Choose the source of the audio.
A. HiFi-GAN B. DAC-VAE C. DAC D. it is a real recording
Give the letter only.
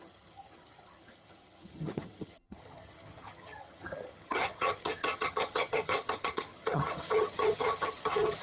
A